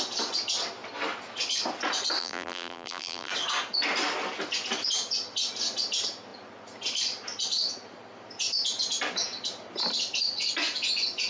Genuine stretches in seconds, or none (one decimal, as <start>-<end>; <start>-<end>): 0.0-2.2; 3.3-11.3